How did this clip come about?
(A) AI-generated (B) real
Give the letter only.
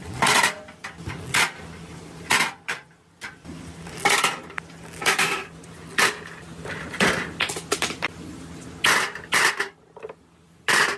B